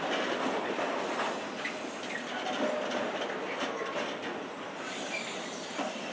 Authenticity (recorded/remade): recorded